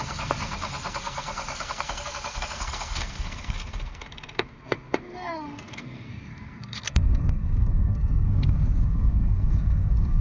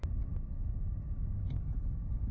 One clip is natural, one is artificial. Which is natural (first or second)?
second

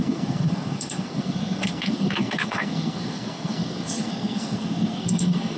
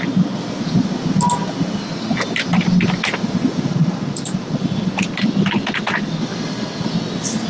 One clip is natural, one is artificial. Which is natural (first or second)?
second